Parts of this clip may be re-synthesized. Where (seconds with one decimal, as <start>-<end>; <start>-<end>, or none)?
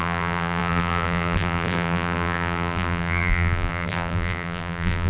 0.0-5.1